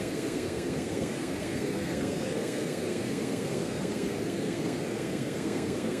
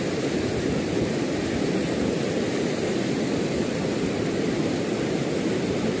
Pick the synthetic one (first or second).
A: first